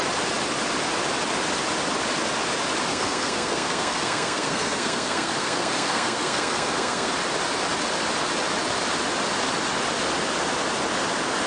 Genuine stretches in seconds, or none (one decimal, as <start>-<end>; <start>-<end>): 0.0-2.9; 7.1-11.5